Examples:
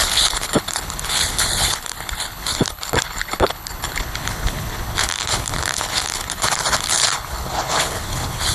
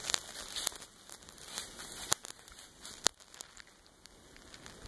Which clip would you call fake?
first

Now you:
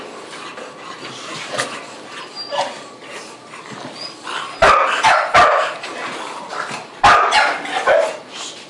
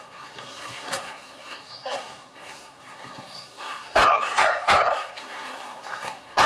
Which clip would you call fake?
second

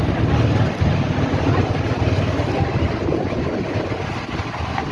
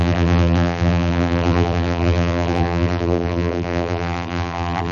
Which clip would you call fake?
second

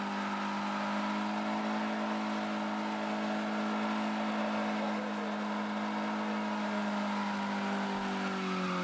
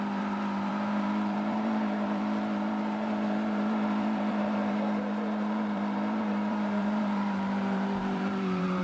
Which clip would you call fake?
second